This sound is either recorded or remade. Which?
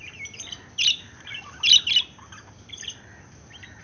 recorded